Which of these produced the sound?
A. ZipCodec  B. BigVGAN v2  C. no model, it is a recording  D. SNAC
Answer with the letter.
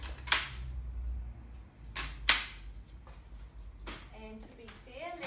C